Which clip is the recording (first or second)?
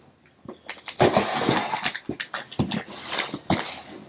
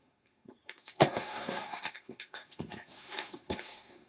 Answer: first